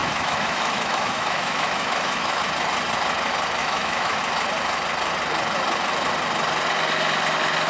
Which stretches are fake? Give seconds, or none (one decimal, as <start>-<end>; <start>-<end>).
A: 0.0-2.4; 3.6-4.2